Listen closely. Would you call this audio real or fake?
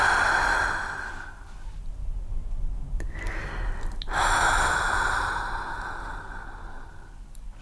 real